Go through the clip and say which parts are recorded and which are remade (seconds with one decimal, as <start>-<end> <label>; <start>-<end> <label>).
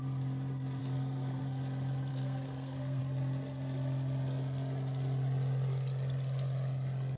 0.0-0.8 recorded; 0.8-1.4 remade; 1.4-2.1 recorded; 2.1-3.0 remade; 3.0-7.2 recorded